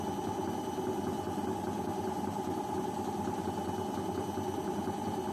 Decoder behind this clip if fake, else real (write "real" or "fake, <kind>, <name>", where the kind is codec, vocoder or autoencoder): real